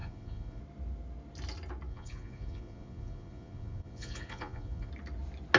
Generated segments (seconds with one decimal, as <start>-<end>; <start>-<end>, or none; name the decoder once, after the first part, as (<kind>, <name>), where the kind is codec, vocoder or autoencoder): 0.0-0.6 (vocoder, Vocos); 1.9-4.9

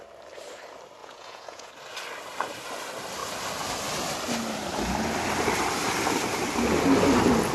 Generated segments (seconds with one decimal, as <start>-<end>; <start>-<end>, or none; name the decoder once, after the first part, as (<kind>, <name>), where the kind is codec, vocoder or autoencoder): 1.0-1.7 (vocoder, Vocos)